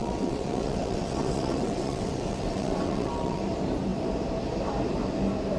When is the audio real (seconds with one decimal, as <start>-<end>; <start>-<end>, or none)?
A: 3.4-5.6